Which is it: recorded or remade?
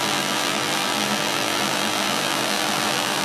remade